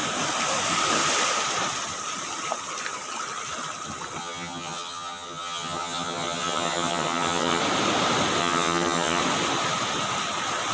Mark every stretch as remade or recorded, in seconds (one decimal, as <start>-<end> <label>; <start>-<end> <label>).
0.0-4.2 recorded; 4.2-7.6 remade; 7.6-8.4 recorded; 8.4-9.2 remade; 9.2-10.7 recorded